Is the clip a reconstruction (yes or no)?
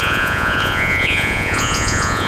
yes